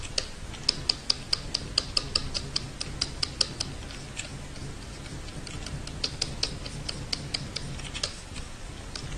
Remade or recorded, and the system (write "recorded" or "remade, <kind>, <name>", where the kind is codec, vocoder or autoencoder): recorded